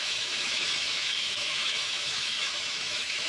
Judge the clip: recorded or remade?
remade